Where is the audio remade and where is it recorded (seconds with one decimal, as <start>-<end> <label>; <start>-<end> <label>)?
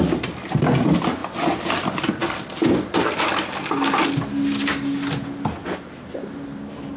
0.0-7.0 recorded